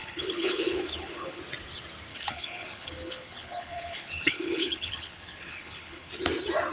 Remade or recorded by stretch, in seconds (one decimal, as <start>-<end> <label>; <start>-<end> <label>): 0.0-1.4 remade; 1.4-2.1 recorded; 2.1-6.1 remade; 6.1-6.7 recorded